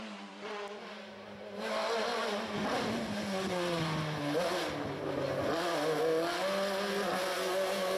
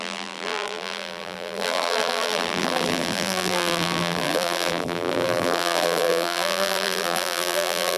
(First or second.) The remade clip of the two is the second